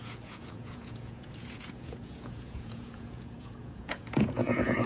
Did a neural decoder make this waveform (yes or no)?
yes